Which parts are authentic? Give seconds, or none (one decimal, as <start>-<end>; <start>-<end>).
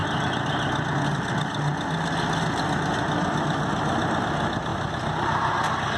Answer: 0.0-6.0